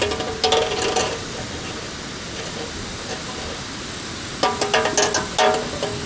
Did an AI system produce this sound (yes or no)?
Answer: no